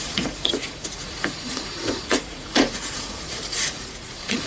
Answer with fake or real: fake